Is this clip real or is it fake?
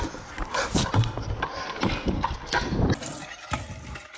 real